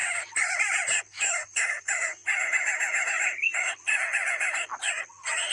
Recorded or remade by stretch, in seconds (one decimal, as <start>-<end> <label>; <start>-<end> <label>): 0.0-1.1 recorded; 1.1-3.7 remade; 3.7-5.5 recorded